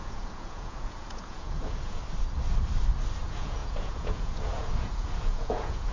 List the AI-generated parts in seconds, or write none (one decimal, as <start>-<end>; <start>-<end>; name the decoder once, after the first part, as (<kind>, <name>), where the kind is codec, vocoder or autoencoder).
0.0-2.0 (vocoder, Vocos); 3.2-5.9